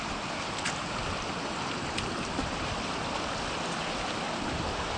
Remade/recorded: remade